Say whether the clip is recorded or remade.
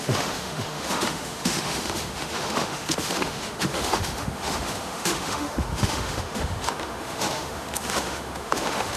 remade